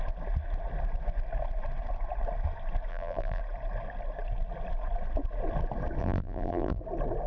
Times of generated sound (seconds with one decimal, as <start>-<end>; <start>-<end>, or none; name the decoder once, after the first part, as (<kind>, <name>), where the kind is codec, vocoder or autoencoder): 2.9-3.4 (vocoder, BigVGAN v2); 6.0-6.8

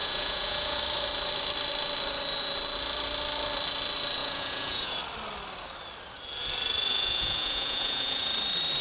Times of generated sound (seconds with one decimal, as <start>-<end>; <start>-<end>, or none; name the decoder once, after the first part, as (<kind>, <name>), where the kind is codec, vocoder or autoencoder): 0.0-0.8 (vocoder, Vocos); 4.2-5.0; 6.9-8.2